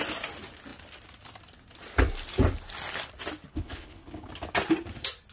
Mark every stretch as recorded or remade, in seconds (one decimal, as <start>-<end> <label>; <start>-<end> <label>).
0.0-3.5 recorded; 3.5-4.3 remade; 4.3-5.3 recorded